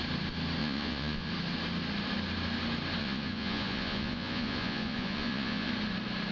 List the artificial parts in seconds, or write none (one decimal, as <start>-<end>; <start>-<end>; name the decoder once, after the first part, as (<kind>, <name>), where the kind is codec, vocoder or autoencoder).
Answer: 0.6-1.3 (vocoder, Vocos); 3.0-5.7